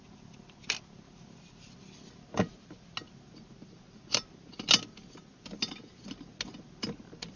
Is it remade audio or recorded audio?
recorded